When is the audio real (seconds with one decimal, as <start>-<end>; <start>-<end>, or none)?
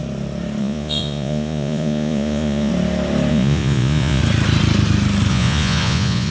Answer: 0.0-0.6; 2.7-3.3; 4.2-5.3